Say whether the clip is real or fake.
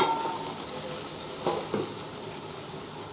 real